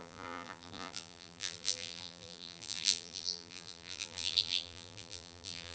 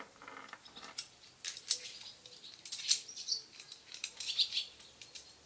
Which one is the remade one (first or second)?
first